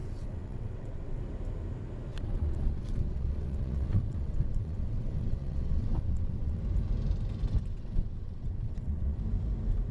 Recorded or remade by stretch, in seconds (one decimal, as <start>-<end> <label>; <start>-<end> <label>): 0.0-1.2 remade; 1.2-2.1 recorded; 2.1-6.6 remade; 6.6-7.7 recorded; 7.7-9.2 remade; 9.2-9.9 recorded